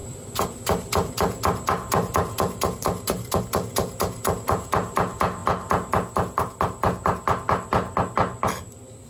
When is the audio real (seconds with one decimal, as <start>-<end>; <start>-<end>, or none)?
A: 3.4-9.1